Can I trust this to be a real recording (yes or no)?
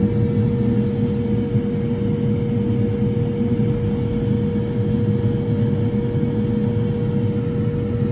yes